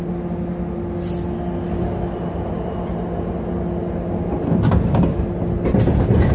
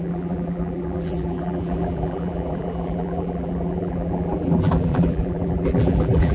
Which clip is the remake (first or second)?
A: second